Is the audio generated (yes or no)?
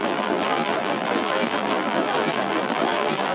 yes